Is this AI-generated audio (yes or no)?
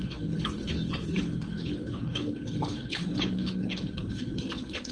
yes